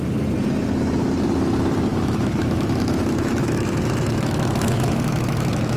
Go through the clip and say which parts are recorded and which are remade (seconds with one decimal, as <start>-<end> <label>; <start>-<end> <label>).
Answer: 0.0-1.9 recorded; 1.9-5.8 remade